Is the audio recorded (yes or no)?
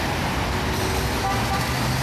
yes